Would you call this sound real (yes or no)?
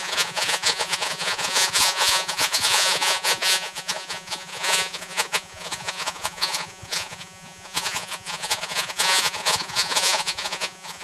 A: no